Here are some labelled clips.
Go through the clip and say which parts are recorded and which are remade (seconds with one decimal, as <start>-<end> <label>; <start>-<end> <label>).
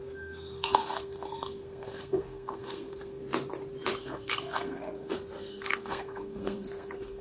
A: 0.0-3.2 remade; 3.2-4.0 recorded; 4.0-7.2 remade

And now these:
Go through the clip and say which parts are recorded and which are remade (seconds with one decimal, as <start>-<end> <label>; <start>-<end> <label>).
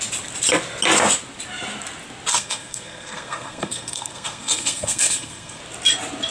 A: 0.0-2.3 recorded; 2.3-5.6 remade; 5.6-6.3 recorded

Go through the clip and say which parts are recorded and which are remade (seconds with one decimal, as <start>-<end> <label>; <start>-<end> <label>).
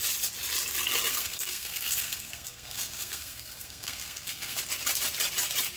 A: 0.0-1.1 recorded; 1.1-4.6 remade; 4.6-5.8 recorded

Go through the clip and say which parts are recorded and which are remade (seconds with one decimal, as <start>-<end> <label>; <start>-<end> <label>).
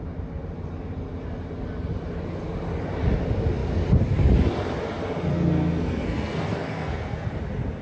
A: 0.0-5.3 recorded; 5.3-7.3 remade; 7.3-7.8 recorded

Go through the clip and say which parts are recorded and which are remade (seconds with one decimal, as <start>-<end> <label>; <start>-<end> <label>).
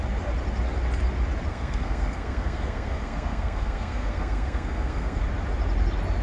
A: 0.0-1.5 recorded; 1.5-5.2 remade; 5.2-6.2 recorded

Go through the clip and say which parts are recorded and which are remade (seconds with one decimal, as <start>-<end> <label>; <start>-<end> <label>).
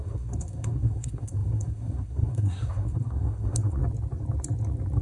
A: 0.0-3.8 remade; 3.8-5.0 recorded